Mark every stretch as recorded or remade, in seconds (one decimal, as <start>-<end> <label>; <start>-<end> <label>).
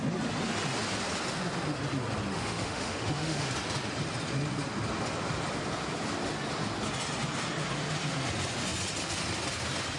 0.0-2.3 recorded; 2.3-3.5 remade; 3.5-10.0 recorded